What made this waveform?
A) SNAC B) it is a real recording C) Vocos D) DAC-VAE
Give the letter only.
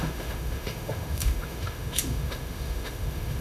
D